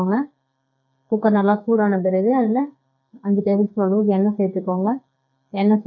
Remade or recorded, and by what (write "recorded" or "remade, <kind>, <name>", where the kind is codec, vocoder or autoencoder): remade, codec, SNAC